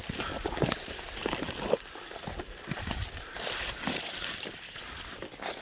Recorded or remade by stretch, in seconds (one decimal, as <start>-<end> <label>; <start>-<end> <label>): 0.0-5.6 recorded